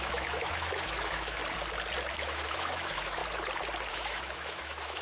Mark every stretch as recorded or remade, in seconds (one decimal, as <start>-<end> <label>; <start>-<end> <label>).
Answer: 0.0-1.4 remade; 1.4-2.1 recorded; 2.1-3.2 remade; 3.2-3.9 recorded; 3.9-5.0 remade